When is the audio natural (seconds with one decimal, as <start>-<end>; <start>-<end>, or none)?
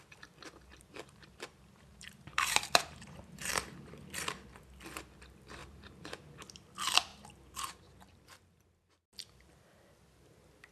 0.0-0.7; 3.5-5.6; 6.3-7.1; 9.6-10.7